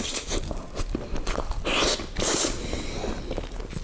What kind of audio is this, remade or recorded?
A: recorded